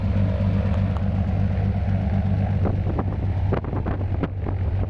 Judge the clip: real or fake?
real